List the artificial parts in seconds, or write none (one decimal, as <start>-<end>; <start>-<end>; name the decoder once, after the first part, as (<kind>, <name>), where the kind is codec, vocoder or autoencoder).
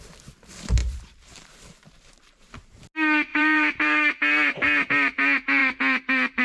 0.8-2.8 (vocoder, BigVGAN v2); 3.3-4.9